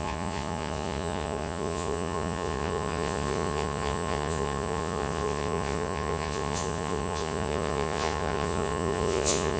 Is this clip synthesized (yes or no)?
yes